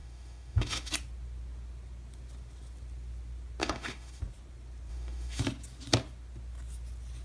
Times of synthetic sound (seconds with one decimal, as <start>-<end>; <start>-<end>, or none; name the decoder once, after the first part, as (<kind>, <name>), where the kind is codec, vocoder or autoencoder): 0.0-0.9 (autoencoder, DAC-VAE); 3.6-4.2; 4.9-5.4